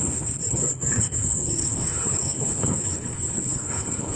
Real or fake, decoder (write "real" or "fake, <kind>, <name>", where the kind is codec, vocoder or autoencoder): fake, codec, HILCodec